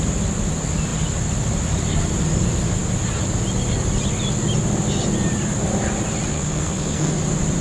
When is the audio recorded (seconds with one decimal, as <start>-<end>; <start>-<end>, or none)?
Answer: 0.0-6.3; 7.1-7.6